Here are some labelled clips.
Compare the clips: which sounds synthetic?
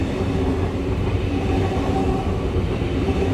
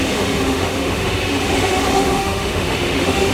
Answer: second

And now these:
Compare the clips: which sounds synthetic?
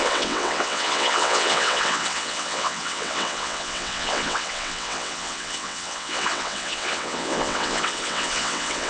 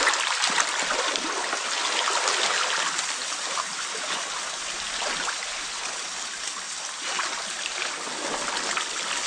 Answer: first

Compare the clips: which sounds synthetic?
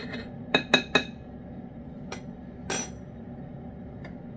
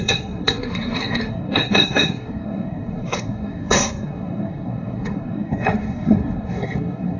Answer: second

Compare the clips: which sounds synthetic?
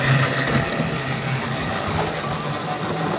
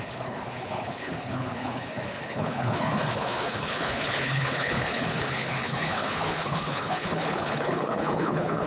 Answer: second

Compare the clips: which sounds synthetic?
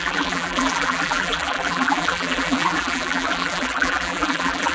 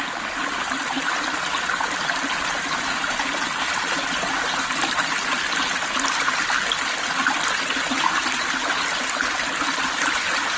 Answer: first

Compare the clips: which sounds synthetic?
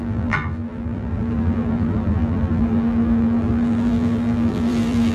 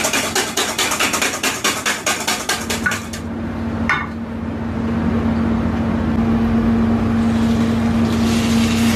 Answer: first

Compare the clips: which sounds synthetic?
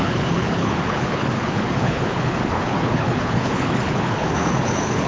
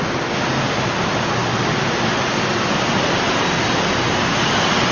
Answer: first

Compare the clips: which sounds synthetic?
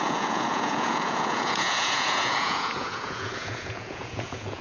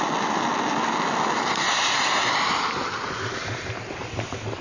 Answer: first